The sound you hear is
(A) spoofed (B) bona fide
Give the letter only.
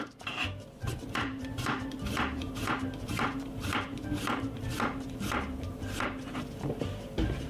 A